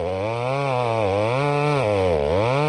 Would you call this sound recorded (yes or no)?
yes